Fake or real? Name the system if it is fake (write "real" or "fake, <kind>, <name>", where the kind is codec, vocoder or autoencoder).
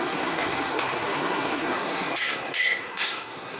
fake, codec, SNAC